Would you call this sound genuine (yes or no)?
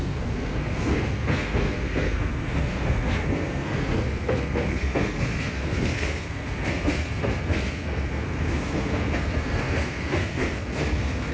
no